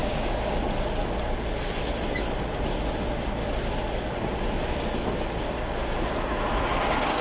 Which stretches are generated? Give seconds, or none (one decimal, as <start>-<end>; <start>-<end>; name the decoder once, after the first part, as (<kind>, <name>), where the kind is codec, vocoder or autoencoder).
0.0-0.6 (codec, DAC)

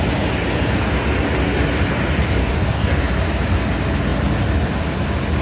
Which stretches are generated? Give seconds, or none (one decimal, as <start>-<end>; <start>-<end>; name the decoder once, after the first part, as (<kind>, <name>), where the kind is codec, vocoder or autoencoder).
2.4-3.0 (codec, DAC)

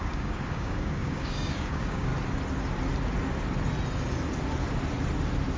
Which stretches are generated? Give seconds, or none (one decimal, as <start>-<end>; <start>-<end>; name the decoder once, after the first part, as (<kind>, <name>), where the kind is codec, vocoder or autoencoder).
0.0-2.1 (codec, DAC)

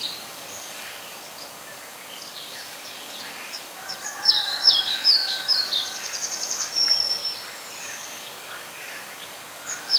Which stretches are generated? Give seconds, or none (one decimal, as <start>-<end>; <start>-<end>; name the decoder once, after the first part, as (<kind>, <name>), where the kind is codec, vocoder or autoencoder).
0.0-7.2 (codec, DAC); 7.8-10.0

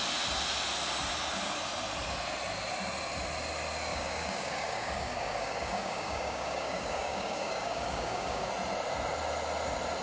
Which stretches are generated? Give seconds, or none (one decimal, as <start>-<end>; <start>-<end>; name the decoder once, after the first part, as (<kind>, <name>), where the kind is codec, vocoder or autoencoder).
3.9-8.5 (codec, DAC)

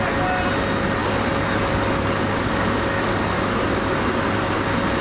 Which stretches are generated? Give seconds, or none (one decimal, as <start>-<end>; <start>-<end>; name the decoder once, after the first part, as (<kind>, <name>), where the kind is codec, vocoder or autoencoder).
1.0-4.0 (codec, DAC)

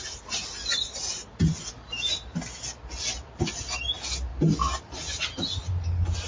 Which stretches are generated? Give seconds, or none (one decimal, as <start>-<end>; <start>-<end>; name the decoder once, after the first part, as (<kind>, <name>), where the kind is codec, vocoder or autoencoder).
none